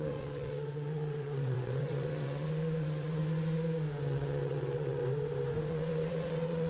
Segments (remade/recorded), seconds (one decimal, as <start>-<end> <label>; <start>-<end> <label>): 0.0-3.2 remade; 3.2-4.0 recorded; 4.0-5.0 remade; 5.0-5.7 recorded; 5.7-6.7 remade